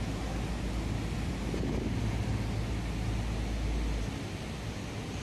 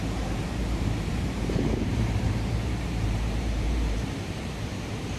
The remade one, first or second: second